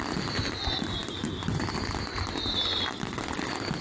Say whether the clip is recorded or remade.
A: recorded